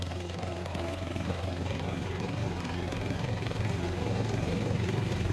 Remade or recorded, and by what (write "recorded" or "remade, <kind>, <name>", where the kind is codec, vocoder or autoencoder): remade, codec, SNAC